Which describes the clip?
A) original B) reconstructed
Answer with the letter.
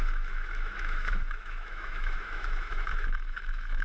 B